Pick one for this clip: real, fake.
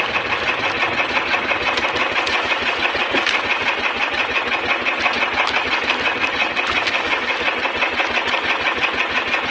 real